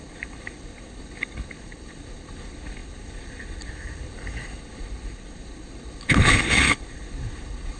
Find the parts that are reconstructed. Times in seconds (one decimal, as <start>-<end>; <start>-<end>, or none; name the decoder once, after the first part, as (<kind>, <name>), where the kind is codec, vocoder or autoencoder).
0.0-7.8 (codec, HILCodec)